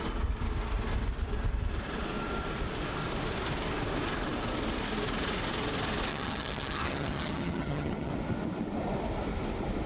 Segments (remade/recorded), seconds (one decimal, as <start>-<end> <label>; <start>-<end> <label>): 0.0-6.1 recorded; 6.1-8.1 remade; 8.1-9.9 recorded